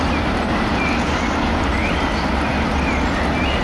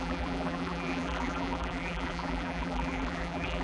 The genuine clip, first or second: first